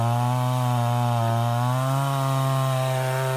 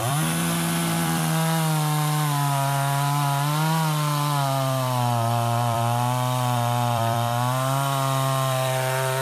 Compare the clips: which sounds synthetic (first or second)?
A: second